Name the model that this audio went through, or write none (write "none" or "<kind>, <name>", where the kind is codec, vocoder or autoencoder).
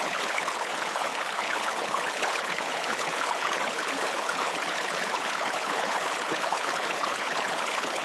codec, HILCodec